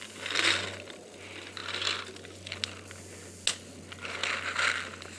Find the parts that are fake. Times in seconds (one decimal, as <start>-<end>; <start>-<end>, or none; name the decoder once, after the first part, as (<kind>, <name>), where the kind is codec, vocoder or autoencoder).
none